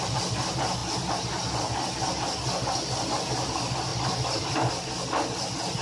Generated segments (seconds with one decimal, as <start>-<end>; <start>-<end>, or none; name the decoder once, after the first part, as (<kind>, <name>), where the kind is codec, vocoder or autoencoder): 3.9-4.7 (vocoder, BigVGAN v2)